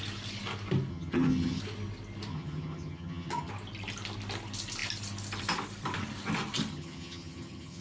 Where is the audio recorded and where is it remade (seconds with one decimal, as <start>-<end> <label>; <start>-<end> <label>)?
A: 0.0-0.9 recorded; 0.9-1.6 remade; 1.6-2.3 recorded; 2.3-3.5 remade; 3.5-6.7 recorded; 6.7-7.8 remade